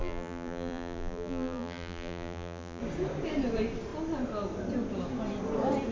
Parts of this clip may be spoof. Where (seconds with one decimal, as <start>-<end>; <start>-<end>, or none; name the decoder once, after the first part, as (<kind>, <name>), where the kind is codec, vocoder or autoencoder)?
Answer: 0.0-2.8 (vocoder, BigVGAN v2)